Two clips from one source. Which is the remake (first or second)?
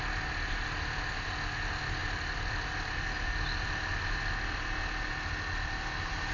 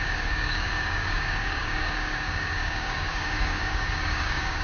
second